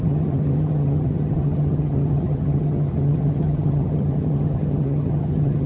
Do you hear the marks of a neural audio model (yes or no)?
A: yes